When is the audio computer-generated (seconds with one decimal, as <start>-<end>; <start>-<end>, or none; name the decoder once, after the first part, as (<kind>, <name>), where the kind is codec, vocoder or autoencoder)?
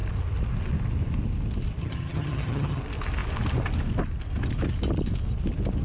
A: 1.8-2.8 (vocoder, HiFi-GAN)